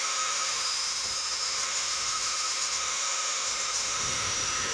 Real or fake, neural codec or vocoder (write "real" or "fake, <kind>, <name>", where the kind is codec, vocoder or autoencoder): fake, autoencoder, DAC-VAE